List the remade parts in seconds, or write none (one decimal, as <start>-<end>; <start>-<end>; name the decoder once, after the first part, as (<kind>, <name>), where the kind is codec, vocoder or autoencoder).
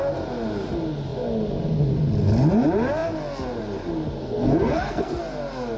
4.2-5.2 (codec, SNAC)